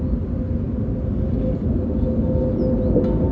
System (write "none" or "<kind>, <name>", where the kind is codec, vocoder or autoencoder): none